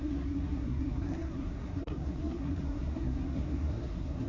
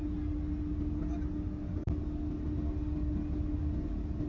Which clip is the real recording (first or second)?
second